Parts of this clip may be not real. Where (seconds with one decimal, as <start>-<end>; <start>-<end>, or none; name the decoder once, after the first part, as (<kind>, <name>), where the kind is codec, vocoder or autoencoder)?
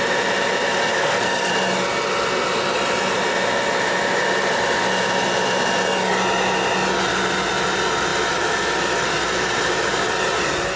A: 0.9-1.5 (codec, SNAC)